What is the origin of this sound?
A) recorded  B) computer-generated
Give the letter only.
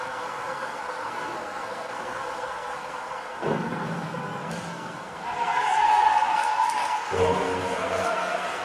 B